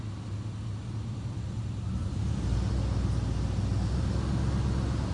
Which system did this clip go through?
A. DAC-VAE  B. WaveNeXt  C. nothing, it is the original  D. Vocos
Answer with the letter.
C